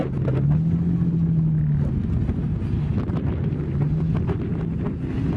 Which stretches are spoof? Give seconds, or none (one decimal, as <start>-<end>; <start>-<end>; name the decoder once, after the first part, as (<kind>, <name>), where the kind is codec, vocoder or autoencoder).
none